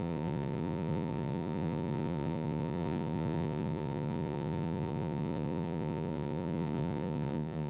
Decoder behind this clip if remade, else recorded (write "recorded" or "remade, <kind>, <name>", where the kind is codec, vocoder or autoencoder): remade, vocoder, Vocos